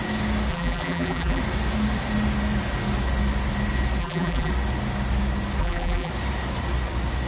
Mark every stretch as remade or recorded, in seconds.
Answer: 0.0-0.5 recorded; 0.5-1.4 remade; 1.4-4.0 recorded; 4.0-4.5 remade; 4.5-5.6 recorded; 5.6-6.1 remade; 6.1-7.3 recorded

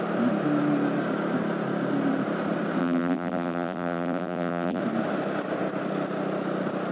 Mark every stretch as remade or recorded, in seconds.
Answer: 0.0-2.8 recorded; 2.8-4.8 remade; 4.8-6.9 recorded

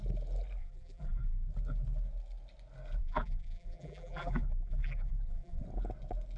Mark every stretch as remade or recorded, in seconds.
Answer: 0.0-0.6 recorded; 0.6-1.5 remade; 1.5-3.0 recorded; 3.0-5.6 remade; 5.6-6.4 recorded

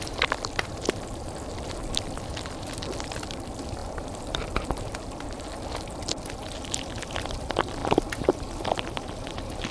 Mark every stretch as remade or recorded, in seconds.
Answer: 0.0-3.8 recorded; 3.8-4.8 remade; 4.8-9.7 recorded